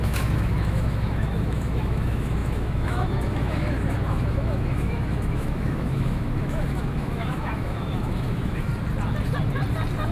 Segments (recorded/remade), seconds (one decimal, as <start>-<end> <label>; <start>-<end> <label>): 0.0-8.7 remade; 8.7-10.1 recorded